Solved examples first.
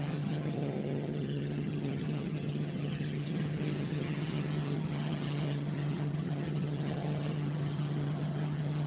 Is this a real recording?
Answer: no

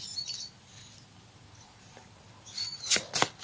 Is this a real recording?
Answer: yes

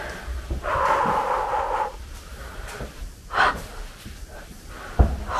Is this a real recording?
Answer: yes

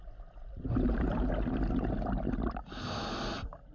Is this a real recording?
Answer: yes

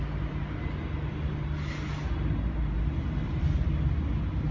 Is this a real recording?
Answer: yes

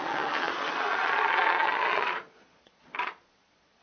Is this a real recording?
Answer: no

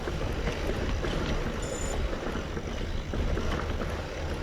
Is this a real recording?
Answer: yes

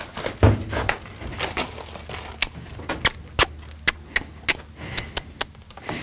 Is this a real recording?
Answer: yes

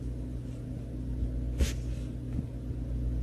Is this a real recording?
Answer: yes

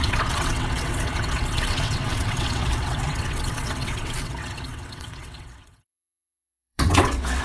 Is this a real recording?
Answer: no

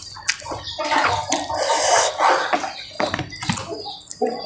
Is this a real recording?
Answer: yes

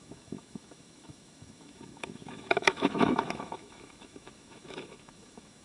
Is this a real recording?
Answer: no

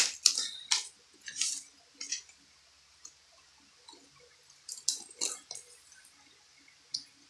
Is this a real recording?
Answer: yes